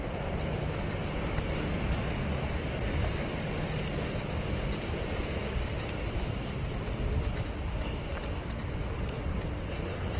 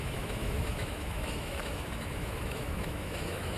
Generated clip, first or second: second